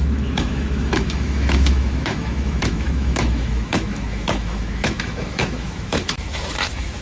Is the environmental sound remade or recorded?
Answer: remade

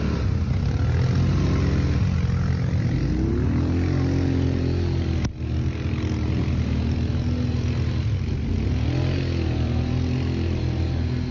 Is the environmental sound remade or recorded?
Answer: recorded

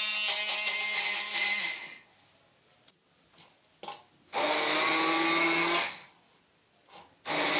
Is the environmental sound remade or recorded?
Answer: recorded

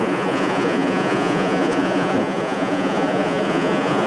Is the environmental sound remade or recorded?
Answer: remade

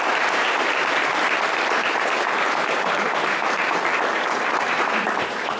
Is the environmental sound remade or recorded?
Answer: remade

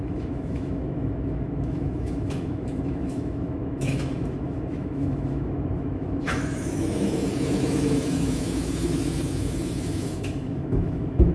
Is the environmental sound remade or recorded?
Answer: remade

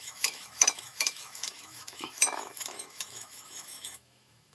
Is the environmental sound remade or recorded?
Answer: remade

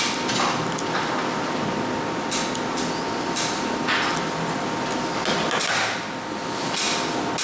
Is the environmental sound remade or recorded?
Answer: recorded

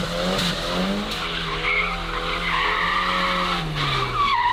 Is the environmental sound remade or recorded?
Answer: recorded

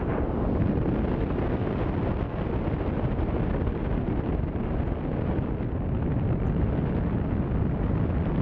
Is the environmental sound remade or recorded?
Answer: recorded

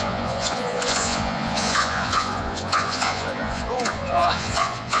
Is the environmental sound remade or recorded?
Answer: remade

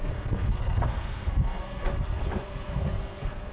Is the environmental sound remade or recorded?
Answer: remade